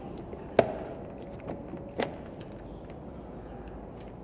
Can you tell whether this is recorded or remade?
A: recorded